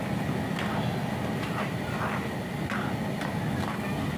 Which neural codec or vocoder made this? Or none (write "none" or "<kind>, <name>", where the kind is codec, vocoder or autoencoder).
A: none